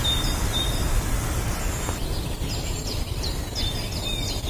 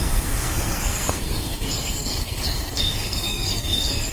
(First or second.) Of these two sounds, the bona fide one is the first